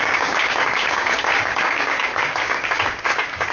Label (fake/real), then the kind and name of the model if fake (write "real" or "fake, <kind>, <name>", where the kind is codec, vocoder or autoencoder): fake, codec, DAC